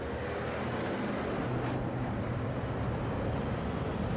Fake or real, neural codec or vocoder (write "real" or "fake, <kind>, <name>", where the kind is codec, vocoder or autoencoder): real